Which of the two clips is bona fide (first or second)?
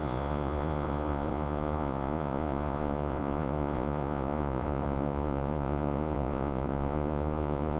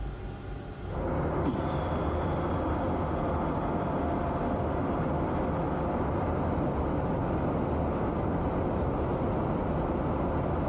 second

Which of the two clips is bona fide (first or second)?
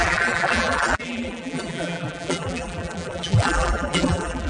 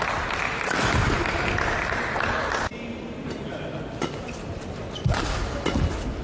second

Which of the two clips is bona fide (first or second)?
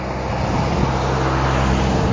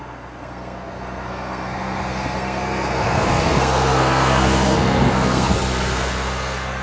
first